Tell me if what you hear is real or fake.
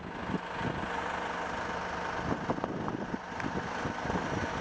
real